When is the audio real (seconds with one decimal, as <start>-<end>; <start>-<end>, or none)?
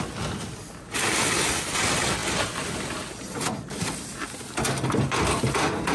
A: 0.0-5.9